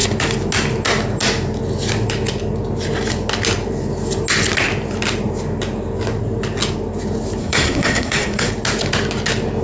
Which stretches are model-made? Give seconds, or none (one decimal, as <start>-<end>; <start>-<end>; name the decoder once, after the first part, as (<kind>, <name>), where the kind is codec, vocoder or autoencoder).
7.4-8.5 (codec, SNAC)